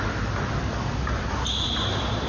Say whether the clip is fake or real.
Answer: fake